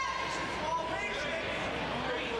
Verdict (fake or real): real